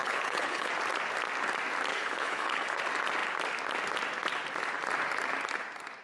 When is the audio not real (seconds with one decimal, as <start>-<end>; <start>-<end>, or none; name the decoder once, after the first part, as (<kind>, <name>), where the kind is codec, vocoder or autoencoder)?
0.0-0.7 (codec, HILCodec); 1.9-2.8

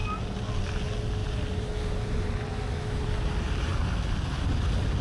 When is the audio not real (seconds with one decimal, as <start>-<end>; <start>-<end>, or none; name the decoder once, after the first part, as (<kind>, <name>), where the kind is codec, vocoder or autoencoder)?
none

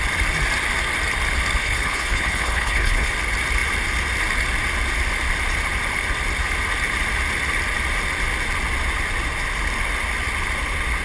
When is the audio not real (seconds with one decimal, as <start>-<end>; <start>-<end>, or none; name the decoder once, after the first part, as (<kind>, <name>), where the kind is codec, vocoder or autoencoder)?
1.6-3.1 (codec, HILCodec)

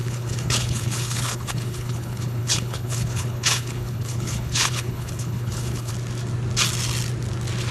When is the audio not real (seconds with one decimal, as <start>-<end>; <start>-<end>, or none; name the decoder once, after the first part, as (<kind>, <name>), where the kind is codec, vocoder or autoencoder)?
0.0-5.9 (codec, HILCodec)

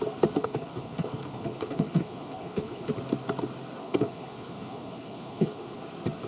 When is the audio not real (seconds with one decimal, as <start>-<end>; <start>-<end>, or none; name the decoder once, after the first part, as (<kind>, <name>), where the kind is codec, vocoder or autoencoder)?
0.4-2.9 (codec, HILCodec); 3.8-5.8

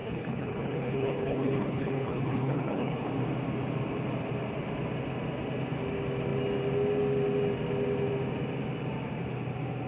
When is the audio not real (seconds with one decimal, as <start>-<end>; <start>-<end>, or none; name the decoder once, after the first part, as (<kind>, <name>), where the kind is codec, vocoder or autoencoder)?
0.0-3.1 (codec, HILCodec)

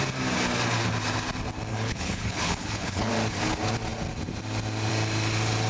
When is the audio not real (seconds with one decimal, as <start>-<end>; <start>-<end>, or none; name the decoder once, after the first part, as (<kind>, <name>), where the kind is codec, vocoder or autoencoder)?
1.7-3.1 (codec, HILCodec)